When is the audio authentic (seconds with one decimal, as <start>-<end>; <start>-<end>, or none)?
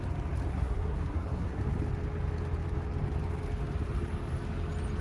0.0-0.5; 1.6-5.0